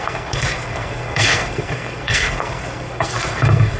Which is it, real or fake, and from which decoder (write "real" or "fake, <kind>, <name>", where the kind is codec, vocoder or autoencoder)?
fake, codec, SNAC